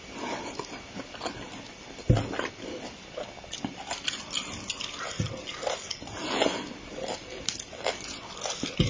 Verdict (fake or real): real